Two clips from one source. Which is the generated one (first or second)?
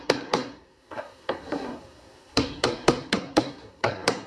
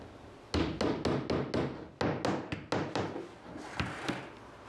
first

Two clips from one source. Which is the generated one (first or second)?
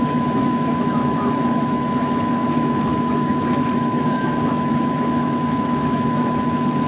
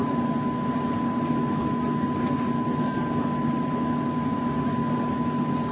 first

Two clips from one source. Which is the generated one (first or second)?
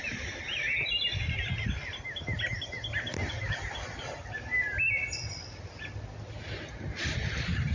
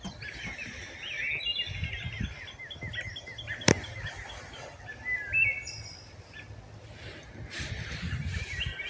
first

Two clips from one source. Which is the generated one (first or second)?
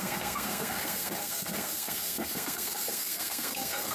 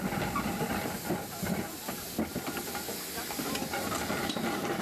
first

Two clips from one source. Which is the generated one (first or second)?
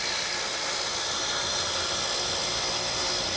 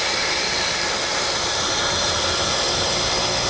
second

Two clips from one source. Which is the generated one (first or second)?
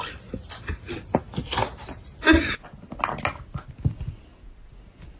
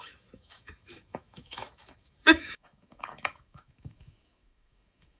second